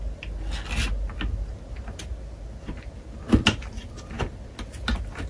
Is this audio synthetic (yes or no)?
no